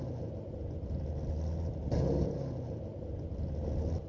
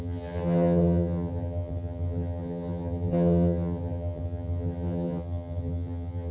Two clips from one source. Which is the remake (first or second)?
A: second